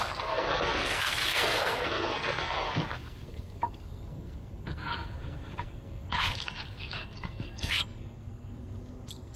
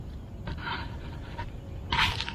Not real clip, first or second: first